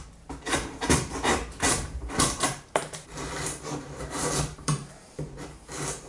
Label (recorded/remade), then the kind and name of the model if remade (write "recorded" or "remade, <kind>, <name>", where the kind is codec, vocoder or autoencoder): remade, vocoder, BigVGAN v2